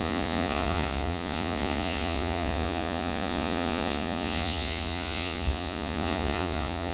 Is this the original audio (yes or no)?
no